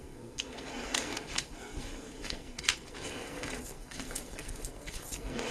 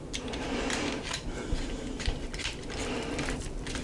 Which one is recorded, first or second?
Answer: second